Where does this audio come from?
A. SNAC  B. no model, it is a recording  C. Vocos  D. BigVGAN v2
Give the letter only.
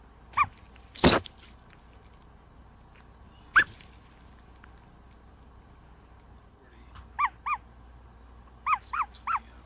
B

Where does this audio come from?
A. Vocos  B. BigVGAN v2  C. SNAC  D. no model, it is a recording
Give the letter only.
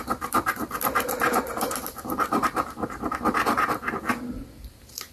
B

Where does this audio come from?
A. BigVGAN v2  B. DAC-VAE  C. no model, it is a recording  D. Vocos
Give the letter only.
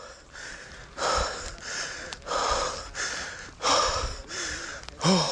A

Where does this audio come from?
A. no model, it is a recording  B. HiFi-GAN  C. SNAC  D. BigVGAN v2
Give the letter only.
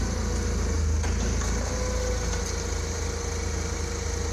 A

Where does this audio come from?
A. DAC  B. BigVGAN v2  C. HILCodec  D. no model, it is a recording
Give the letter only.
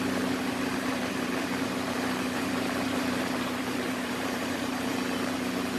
B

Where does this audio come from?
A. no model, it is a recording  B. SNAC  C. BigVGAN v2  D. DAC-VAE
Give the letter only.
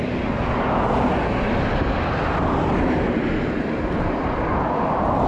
A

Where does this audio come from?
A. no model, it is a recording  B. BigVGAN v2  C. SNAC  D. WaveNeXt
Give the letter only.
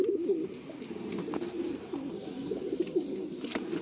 A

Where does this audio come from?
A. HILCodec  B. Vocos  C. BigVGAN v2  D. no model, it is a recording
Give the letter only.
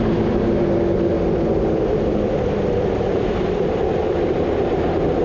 D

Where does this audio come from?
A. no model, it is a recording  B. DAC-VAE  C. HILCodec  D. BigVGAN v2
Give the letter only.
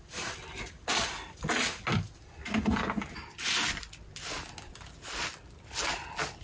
A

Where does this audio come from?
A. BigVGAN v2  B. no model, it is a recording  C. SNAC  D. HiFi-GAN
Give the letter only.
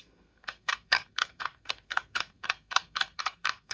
C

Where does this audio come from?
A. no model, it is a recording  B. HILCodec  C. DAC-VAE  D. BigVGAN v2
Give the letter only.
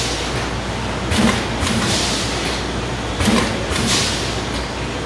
A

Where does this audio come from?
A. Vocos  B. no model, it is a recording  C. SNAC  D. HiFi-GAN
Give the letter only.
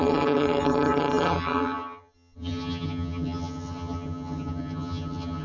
D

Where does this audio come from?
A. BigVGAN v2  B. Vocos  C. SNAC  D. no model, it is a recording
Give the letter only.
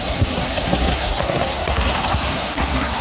C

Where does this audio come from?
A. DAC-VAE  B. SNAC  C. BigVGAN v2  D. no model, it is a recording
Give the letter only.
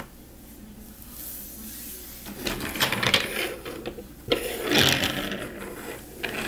D